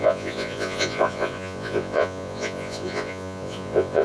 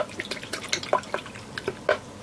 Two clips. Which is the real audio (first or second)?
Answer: second